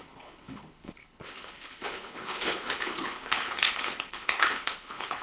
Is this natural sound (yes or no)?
no